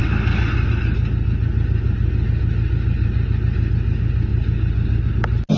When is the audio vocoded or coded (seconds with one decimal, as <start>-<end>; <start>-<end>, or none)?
none